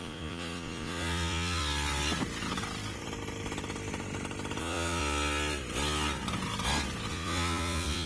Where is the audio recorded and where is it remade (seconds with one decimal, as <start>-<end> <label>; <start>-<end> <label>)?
0.0-1.6 remade; 1.6-4.6 recorded; 4.6-5.0 remade; 5.0-7.1 recorded; 7.1-8.1 remade

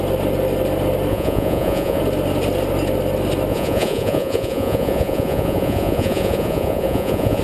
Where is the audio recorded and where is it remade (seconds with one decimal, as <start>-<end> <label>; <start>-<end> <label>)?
0.0-1.1 recorded; 1.1-2.0 remade; 2.0-3.5 recorded; 3.5-7.4 remade

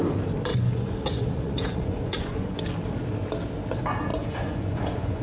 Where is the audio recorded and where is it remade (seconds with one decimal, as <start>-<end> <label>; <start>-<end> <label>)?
0.0-0.5 recorded; 0.5-2.6 remade; 2.6-4.1 recorded; 4.1-5.2 remade

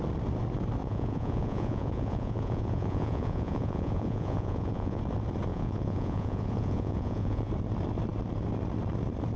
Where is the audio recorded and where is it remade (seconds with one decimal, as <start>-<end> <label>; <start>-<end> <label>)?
0.0-0.8 recorded; 0.8-5.0 remade; 5.0-5.5 recorded; 5.5-7.5 remade; 7.5-9.4 recorded

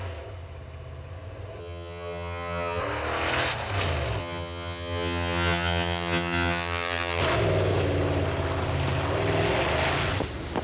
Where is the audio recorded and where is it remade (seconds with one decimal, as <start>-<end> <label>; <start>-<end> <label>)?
0.0-1.6 recorded; 1.6-2.8 remade; 2.8-4.2 recorded; 4.2-7.2 remade; 7.2-10.6 recorded

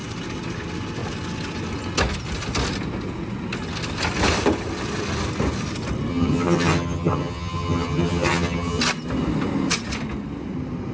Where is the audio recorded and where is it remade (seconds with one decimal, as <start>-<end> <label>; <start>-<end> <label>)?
0.0-6.1 recorded; 6.1-8.8 remade; 8.8-10.9 recorded